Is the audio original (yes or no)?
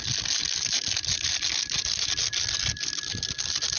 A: yes